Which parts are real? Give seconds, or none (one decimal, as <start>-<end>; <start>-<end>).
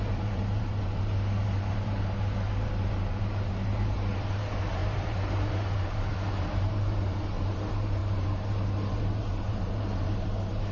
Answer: none